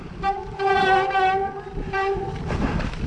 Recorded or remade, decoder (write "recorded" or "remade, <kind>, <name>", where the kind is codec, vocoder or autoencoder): recorded